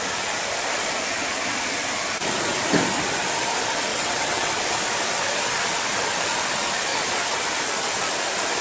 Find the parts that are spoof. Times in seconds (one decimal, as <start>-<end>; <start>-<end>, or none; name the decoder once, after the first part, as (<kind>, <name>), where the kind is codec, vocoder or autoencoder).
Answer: 3.9-4.5 (vocoder, WaveNeXt)